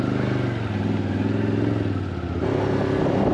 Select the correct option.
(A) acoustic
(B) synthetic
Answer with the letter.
A